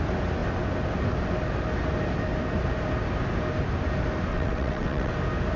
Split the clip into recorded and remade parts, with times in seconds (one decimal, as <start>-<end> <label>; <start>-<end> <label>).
0.0-4.3 recorded; 4.3-5.1 remade; 5.1-5.6 recorded